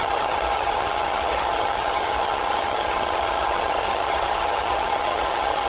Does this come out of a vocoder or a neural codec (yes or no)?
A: yes